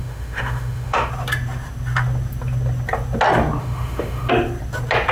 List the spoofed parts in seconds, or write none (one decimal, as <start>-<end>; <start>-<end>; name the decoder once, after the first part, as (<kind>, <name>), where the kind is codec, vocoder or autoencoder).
0.0-1.1 (autoencoder, DAC-VAE); 3.6-4.3